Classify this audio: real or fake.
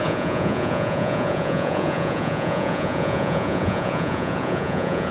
fake